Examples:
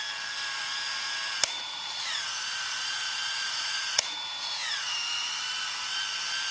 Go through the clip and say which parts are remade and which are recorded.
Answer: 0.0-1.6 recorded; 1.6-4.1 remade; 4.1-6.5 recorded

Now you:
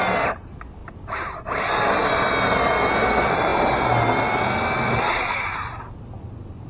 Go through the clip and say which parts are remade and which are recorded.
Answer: 0.0-6.7 recorded

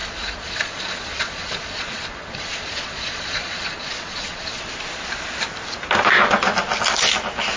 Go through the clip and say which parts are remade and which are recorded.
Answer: 0.0-4.6 remade; 4.6-7.6 recorded

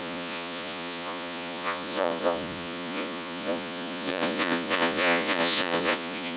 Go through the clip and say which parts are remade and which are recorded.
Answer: 0.0-6.4 remade

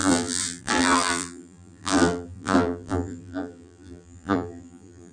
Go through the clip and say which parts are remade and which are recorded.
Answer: 0.0-5.1 remade

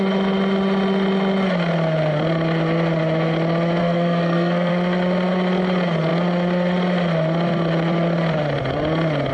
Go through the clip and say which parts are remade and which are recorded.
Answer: 0.0-3.8 recorded; 3.8-4.7 remade; 4.7-9.3 recorded

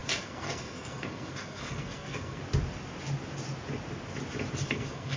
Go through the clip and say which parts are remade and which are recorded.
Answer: 0.0-2.4 remade; 2.4-4.6 recorded; 4.6-5.2 remade